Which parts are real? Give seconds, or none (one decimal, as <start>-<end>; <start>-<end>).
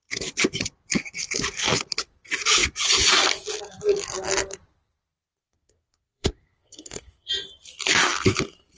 0.0-5.4; 7.3-8.8